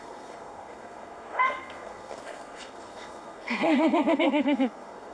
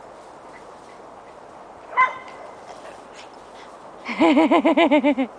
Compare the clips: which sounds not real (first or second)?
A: first